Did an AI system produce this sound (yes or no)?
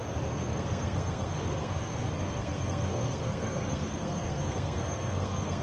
yes